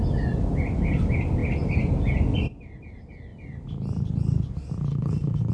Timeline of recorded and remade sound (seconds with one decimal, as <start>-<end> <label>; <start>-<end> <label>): 0.0-4.9 recorded; 4.9-5.5 remade

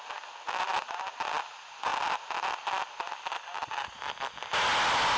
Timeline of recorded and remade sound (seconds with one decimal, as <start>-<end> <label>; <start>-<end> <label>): 0.0-5.2 recorded

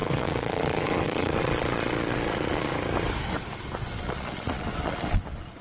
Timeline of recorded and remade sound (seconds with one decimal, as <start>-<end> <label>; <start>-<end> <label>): 0.0-2.7 remade; 2.7-4.0 recorded; 4.0-5.6 remade

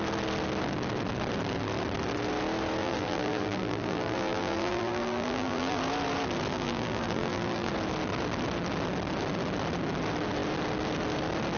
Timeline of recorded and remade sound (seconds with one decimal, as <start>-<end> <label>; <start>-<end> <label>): 0.0-2.8 recorded; 2.8-5.8 remade; 5.8-6.5 recorded; 6.5-7.7 remade; 7.7-11.6 recorded

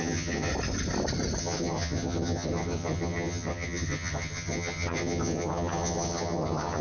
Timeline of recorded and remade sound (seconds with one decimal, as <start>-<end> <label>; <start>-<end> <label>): 0.0-0.5 remade; 0.5-1.4 recorded; 1.4-6.8 remade